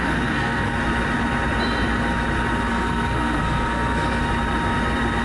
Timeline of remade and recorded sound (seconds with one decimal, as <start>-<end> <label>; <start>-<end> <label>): 0.0-0.7 remade; 0.7-2.7 recorded; 2.7-4.2 remade; 4.2-5.2 recorded